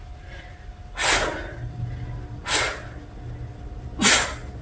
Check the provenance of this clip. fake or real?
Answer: real